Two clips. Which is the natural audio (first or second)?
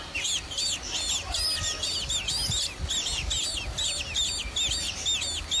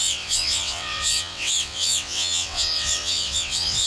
first